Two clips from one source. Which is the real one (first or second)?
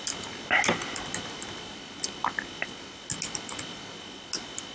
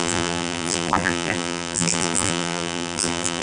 first